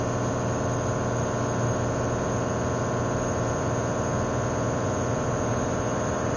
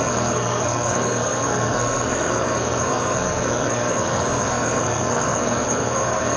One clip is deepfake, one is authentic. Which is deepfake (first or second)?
second